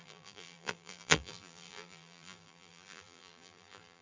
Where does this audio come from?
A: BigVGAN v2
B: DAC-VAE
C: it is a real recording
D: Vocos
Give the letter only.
A